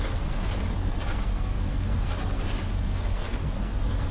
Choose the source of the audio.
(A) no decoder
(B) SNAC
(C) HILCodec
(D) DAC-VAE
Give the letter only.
B